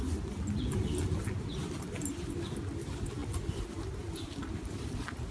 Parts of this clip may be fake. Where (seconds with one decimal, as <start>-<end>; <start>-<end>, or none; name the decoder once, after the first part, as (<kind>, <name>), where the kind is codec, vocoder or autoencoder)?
none